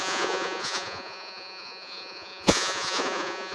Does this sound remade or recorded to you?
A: remade